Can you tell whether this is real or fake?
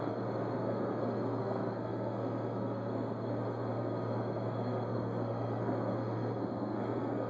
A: fake